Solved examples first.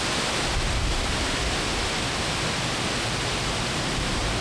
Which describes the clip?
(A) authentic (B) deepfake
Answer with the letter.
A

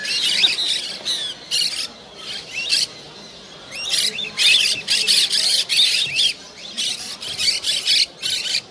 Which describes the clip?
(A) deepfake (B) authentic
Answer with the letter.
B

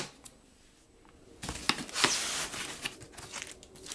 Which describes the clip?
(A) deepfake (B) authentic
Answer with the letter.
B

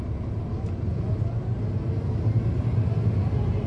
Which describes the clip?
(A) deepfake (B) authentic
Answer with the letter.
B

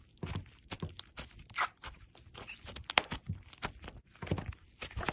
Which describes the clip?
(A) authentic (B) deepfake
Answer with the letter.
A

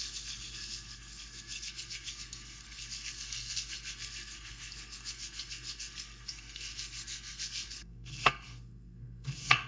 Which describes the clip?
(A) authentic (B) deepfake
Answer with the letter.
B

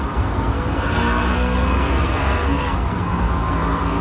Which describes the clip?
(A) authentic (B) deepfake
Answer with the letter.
B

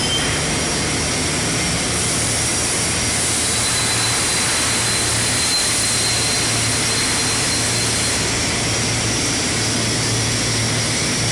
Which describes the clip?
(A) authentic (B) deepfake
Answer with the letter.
A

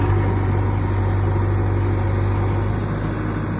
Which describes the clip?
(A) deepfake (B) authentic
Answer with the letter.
B